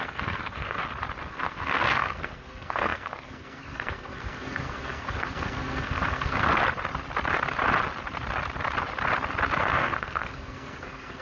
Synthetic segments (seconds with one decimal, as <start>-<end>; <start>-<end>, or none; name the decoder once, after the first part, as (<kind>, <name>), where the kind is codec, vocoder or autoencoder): 0.0-0.8 (codec, SNAC); 1.3-6.6; 9.6-11.2